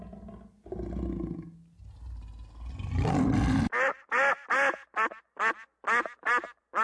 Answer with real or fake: real